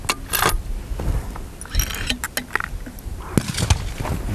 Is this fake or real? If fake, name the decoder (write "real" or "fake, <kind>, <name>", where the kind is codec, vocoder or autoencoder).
real